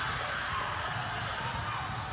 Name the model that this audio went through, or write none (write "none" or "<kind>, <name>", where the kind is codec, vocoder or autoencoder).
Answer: none